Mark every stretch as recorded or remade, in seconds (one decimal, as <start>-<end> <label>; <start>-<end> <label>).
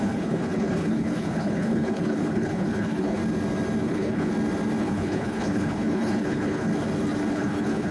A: 0.0-3.2 remade; 3.2-3.8 recorded; 3.8-4.3 remade; 4.3-4.8 recorded; 4.8-6.7 remade; 6.7-7.3 recorded; 7.3-7.9 remade